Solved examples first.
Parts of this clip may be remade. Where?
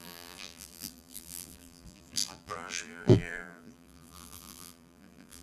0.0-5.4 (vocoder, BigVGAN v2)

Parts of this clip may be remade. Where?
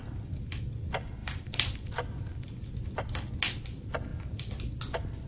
1.2-3.3 (vocoder, BigVGAN v2); 4.1-4.8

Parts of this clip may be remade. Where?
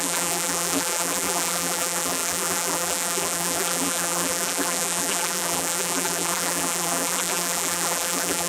0.0-8.5 (vocoder, BigVGAN v2)